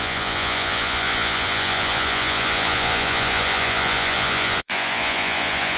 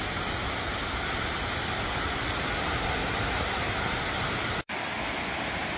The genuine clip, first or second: second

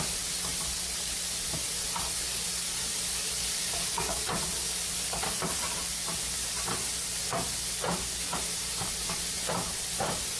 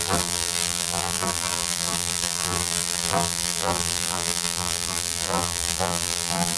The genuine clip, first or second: first